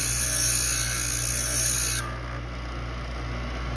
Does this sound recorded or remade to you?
recorded